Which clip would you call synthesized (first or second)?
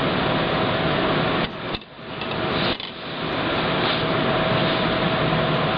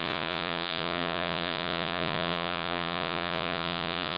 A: second